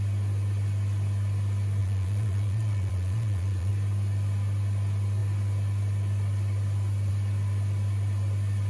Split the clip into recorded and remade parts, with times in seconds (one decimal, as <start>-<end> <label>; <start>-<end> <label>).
0.0-1.8 recorded; 1.8-3.7 remade; 3.7-8.7 recorded